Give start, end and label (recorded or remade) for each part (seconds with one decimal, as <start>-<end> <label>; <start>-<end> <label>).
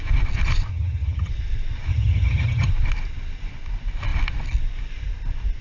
0.0-0.7 recorded; 0.7-1.3 remade; 1.3-1.9 recorded; 1.9-2.7 remade; 2.7-5.6 recorded